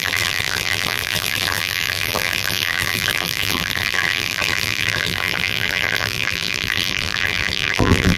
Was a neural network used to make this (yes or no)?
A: yes